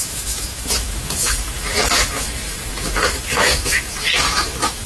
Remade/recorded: remade